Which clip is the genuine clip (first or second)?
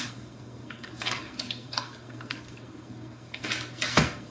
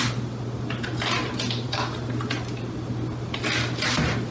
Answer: second